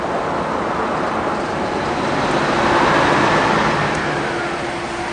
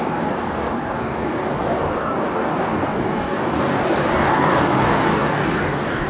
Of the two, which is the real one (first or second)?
first